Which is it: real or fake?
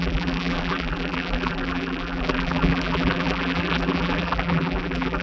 fake